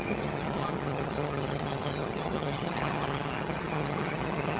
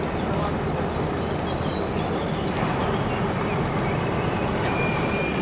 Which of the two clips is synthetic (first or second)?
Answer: first